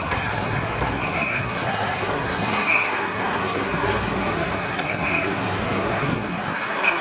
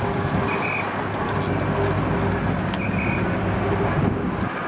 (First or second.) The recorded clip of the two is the second